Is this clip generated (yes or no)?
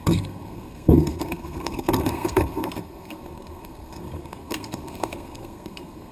yes